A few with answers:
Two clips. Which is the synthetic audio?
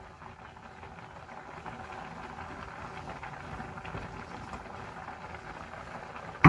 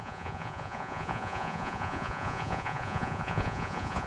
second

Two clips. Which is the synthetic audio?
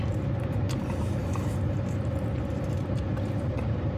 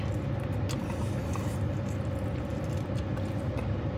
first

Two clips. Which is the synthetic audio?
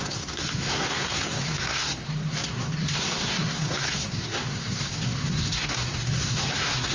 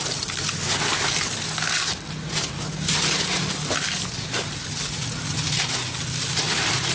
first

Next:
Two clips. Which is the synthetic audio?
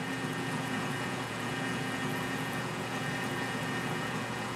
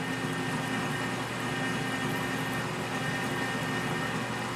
first